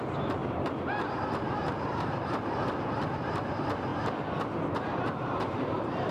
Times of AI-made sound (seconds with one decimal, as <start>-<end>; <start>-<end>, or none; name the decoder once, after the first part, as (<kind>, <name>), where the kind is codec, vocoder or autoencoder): 0.0-3.9 (vocoder, BigVGAN v2); 4.8-6.1